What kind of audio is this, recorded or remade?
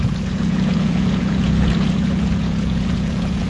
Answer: remade